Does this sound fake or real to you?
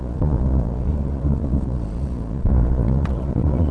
fake